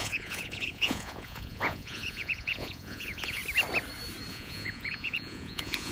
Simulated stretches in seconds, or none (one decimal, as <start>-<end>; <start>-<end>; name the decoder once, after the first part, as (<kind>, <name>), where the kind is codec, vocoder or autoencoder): 0.0-3.4 (vocoder, Vocos); 4.3-5.9